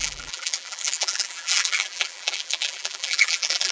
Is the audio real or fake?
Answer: fake